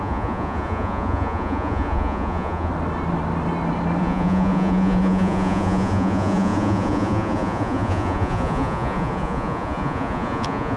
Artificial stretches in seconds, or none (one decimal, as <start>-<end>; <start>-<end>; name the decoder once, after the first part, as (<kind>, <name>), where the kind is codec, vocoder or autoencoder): 0.0-2.7 (vocoder, Vocos); 4.0-10.8

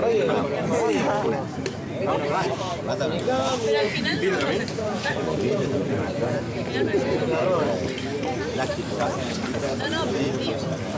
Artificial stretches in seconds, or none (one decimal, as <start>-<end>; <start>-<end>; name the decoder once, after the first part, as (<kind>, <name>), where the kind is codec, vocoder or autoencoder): 3.8-6.4 (vocoder, Vocos)

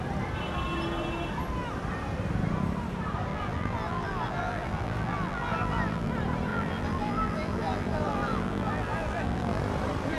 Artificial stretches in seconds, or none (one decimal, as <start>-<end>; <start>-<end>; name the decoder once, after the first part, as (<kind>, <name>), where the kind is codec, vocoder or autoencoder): 3.3-6.1 (vocoder, BigVGAN v2); 6.5-9.6

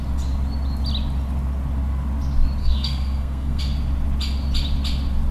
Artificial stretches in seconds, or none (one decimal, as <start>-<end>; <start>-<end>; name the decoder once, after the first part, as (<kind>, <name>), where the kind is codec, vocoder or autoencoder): 2.6-3.6 (codec, SNAC)

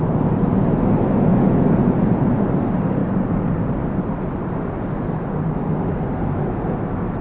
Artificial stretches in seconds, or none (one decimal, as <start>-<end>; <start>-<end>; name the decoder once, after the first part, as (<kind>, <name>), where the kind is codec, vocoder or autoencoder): 1.3-2.2 (vocoder, Vocos); 3.0-3.7